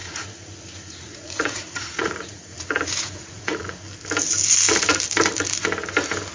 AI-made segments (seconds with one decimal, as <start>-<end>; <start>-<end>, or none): 0.0-3.8